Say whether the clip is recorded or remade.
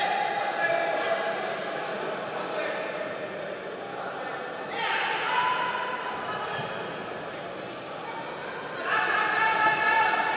recorded